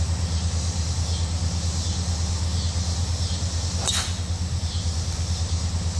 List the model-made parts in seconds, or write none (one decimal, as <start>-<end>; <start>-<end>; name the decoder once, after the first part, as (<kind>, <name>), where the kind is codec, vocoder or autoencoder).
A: none